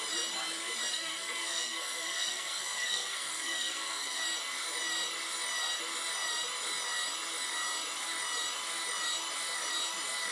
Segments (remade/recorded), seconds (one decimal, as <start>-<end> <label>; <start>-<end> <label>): 0.0-0.9 recorded; 0.9-4.2 remade; 4.2-10.3 recorded